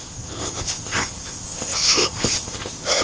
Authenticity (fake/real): fake